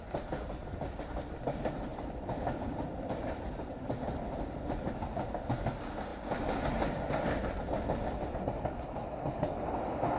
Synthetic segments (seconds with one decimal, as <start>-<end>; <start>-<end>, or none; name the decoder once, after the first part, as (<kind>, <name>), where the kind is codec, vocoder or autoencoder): 0.6-1.3 (vocoder, BigVGAN v2); 1.9-5.6